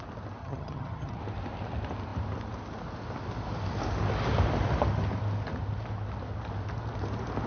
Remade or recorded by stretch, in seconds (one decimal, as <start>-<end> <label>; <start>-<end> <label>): 0.0-0.4 recorded; 0.4-1.2 remade; 1.2-7.5 recorded